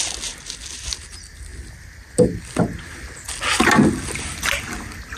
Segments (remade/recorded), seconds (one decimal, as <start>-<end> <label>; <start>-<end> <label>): 0.0-5.2 recorded